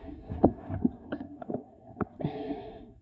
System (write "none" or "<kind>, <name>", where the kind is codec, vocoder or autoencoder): codec, SNAC